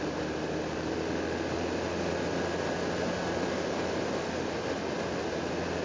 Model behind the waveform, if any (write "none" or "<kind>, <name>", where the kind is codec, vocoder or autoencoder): none